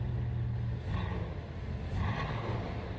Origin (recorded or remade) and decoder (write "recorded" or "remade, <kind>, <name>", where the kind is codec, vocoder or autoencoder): recorded